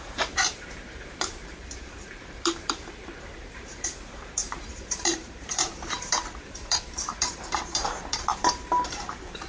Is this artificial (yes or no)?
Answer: yes